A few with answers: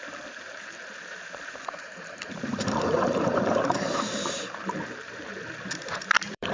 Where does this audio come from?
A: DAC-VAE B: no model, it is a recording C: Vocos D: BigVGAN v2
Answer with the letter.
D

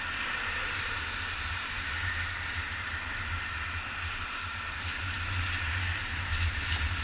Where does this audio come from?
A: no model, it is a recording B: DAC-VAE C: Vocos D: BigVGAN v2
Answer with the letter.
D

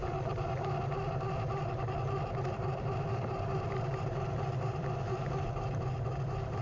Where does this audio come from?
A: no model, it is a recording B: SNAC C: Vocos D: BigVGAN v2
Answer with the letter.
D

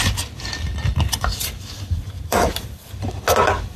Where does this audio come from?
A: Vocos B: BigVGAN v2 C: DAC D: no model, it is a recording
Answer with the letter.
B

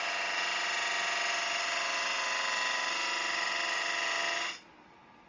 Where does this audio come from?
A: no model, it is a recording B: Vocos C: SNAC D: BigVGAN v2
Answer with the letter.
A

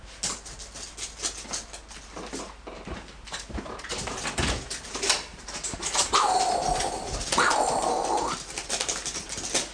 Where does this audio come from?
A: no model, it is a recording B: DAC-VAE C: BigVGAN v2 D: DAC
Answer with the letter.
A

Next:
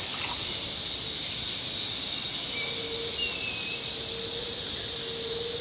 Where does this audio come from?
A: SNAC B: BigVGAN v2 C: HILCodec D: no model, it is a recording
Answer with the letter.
D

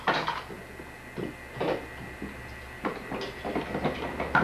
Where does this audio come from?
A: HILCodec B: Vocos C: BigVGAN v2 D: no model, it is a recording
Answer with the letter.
D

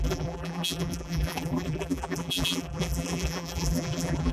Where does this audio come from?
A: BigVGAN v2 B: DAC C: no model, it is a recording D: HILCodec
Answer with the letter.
A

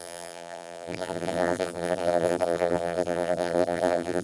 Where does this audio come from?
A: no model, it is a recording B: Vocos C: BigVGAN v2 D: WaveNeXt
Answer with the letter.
C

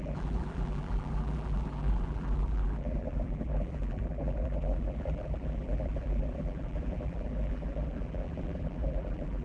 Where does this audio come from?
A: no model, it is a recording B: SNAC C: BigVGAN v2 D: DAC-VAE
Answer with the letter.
C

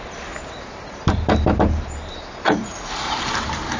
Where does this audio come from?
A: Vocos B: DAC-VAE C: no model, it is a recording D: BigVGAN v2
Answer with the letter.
D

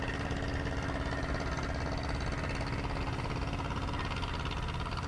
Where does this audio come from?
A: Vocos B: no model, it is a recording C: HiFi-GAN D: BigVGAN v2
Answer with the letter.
B